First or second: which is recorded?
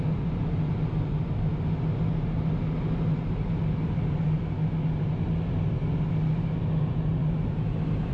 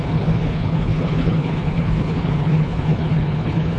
first